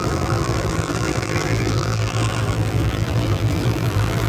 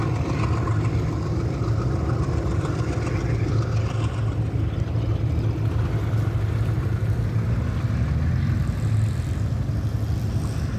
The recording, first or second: second